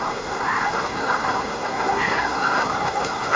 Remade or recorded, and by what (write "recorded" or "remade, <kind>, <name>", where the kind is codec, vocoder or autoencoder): remade, codec, SNAC